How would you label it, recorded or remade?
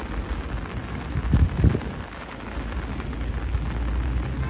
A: recorded